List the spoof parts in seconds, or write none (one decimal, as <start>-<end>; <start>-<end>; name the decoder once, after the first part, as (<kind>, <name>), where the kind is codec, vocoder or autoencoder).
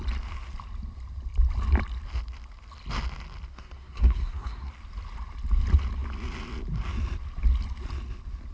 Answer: 3.5-4.7 (codec, SNAC)